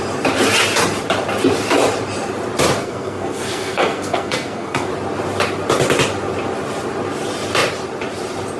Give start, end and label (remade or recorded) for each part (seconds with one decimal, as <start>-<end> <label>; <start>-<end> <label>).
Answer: 0.0-2.8 recorded; 2.8-4.9 remade; 4.9-8.6 recorded

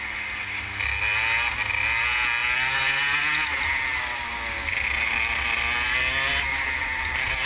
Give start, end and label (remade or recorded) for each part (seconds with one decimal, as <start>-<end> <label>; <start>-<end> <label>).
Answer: 0.0-7.5 recorded